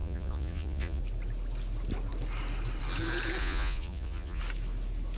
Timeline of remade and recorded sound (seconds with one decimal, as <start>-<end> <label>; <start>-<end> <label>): 0.0-1.0 remade; 1.0-3.4 recorded; 3.4-4.4 remade; 4.4-5.2 recorded